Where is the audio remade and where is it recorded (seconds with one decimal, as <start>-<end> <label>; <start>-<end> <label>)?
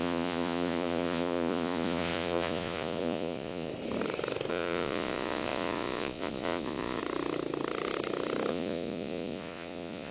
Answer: 0.0-3.7 remade; 3.7-4.5 recorded; 4.5-7.0 remade; 7.0-8.5 recorded; 8.5-10.1 remade